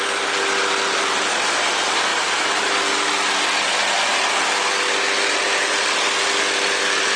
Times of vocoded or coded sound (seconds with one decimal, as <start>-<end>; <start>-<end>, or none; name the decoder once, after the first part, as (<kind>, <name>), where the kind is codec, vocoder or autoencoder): none